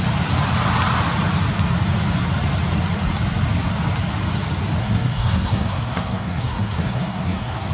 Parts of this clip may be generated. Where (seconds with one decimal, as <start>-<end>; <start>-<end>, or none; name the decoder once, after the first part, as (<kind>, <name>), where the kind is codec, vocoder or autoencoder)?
4.8-7.7 (codec, SNAC)